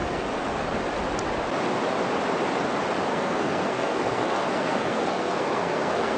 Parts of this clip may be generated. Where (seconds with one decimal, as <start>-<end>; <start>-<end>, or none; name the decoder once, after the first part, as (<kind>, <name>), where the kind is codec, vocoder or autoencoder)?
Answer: 0.0-0.8 (codec, SNAC); 3.1-6.2